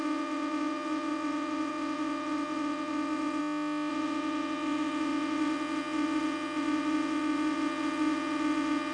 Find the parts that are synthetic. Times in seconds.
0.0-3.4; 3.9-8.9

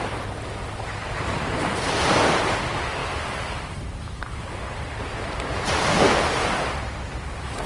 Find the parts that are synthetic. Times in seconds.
3.0-7.0

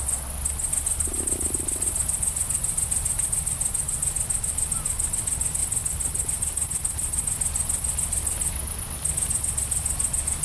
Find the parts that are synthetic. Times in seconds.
none

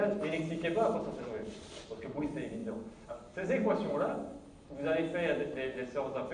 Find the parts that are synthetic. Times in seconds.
none

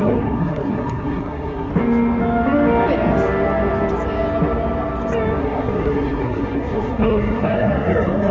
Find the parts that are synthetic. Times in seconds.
0.0-1.7; 5.4-8.3

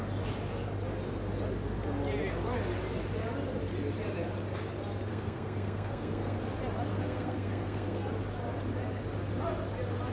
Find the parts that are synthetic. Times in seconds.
5.1-6.4; 6.9-8.1

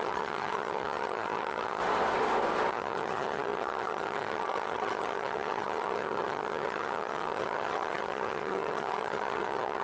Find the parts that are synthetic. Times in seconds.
0.0-1.8; 2.7-9.8